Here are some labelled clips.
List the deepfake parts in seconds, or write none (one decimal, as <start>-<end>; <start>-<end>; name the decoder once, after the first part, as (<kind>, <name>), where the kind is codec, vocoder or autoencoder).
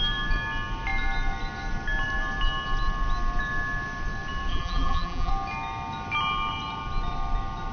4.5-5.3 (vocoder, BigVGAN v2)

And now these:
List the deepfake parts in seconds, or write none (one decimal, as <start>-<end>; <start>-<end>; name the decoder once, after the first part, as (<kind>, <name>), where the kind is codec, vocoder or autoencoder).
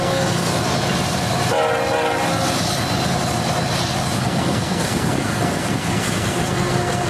0.0-0.5 (codec, SNAC); 4.2-7.1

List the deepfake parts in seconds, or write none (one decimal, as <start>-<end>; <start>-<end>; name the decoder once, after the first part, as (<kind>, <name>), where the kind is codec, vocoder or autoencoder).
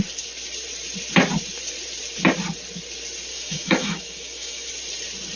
3.3-4.7 (autoencoder, DAC-VAE)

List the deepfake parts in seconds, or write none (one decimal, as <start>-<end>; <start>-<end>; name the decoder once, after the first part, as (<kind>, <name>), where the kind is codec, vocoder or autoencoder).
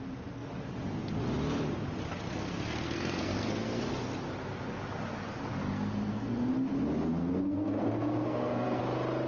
2.4-3.8 (codec, SNAC); 5.6-6.5; 7.2-8.8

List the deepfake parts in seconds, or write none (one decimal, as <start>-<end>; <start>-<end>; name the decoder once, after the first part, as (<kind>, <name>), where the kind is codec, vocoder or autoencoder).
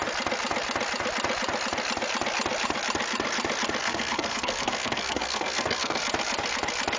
3.8-6.0 (codec, SNAC)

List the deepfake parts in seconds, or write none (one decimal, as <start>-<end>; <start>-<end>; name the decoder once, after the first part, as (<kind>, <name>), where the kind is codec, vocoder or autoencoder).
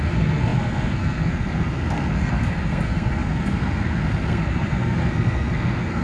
0.0-6.0 (codec, SNAC)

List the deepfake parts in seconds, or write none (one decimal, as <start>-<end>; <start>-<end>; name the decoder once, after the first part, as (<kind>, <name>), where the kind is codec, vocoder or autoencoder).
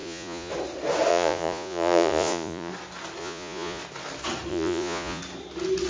0.0-0.5 (vocoder, Vocos); 1.1-2.7; 3.2-3.8; 4.5-5.2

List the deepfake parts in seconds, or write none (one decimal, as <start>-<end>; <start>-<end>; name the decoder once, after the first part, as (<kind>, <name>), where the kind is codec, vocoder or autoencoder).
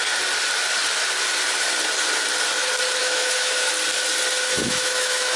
3.0-3.7 (autoencoder, DAC-VAE); 4.5-5.4